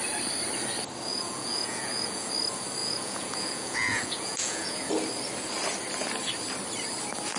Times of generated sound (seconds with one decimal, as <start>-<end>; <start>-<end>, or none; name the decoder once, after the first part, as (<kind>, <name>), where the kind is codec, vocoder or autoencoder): 1.1-2.3 (vocoder, Vocos); 2.8-4.9